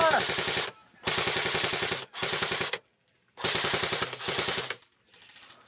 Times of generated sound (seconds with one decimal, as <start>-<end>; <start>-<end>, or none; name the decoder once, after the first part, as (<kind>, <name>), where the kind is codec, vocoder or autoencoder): none